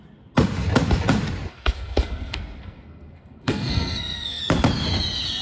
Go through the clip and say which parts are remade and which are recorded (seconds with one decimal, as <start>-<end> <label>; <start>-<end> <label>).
0.0-1.5 recorded; 1.5-4.4 remade; 4.4-5.4 recorded